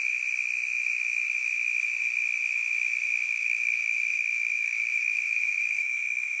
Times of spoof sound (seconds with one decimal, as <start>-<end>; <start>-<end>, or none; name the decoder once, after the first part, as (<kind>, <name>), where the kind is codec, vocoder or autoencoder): 3.2-6.4 (autoencoder, DAC-VAE)